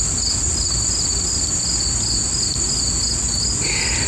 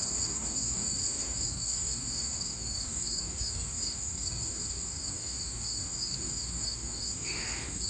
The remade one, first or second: second